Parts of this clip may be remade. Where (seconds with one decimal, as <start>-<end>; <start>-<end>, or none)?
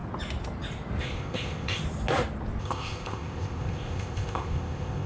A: 1.0-1.8; 2.6-5.1